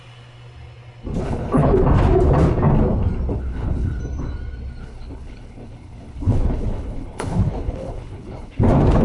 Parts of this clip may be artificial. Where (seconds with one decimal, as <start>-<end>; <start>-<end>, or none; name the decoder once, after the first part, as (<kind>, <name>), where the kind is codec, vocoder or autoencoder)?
1.2-1.8 (codec, HILCodec); 3.3-4.0; 4.8-8.6